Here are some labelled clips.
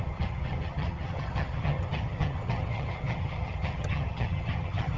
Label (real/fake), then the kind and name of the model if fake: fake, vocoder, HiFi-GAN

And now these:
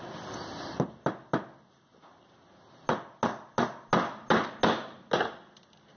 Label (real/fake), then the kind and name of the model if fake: real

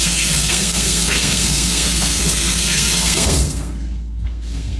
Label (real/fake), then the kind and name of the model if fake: fake, codec, SNAC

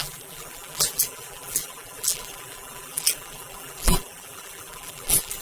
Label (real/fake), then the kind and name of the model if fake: fake, vocoder, BigVGAN v2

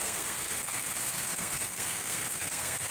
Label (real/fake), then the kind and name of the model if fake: fake, codec, SNAC